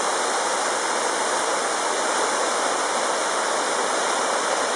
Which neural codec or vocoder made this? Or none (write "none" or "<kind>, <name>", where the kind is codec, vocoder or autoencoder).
none